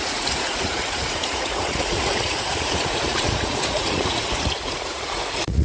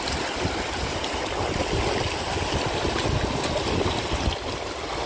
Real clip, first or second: second